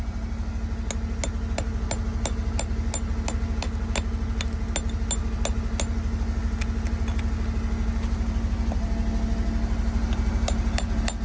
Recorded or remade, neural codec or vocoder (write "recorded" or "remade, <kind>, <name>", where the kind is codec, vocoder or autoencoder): recorded